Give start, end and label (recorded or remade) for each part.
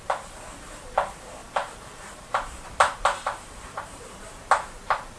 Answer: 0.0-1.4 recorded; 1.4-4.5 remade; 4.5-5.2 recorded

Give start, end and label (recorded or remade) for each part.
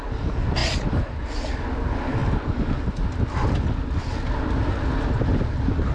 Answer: 0.0-5.9 recorded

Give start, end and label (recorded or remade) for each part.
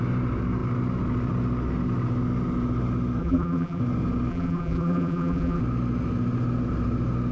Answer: 0.0-3.2 recorded; 3.2-3.8 remade; 3.8-4.3 recorded; 4.3-5.6 remade; 5.6-7.3 recorded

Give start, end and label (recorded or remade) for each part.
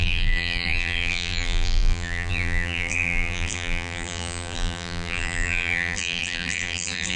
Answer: 0.0-7.2 remade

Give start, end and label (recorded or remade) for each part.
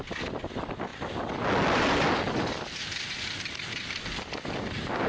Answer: 0.0-5.1 recorded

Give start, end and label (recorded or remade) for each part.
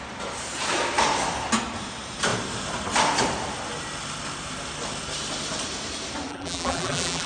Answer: 0.0-6.3 recorded; 6.3-7.3 remade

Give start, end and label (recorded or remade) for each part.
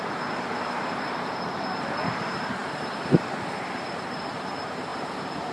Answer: 0.0-5.5 remade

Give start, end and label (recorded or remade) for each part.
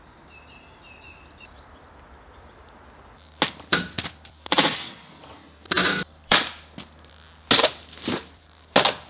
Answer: 0.0-3.7 recorded; 3.7-5.0 remade; 5.0-5.8 recorded; 5.8-6.5 remade; 6.5-9.1 recorded